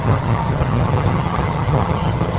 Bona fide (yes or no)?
no